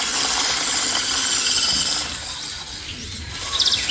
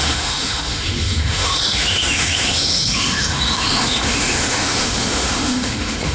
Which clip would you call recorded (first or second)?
first